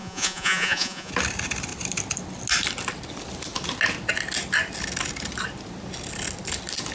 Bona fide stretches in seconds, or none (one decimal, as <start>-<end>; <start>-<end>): 1.1-6.9